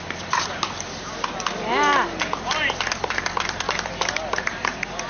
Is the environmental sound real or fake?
fake